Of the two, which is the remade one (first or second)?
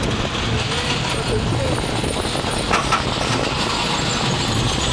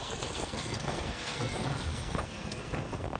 second